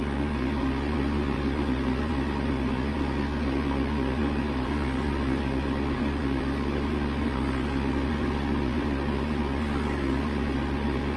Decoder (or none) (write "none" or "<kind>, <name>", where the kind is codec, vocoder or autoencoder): vocoder, Vocos